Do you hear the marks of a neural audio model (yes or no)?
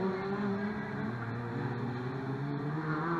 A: no